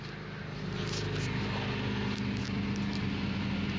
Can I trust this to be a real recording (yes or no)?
yes